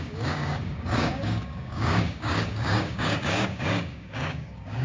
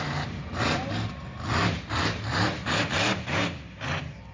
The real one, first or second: second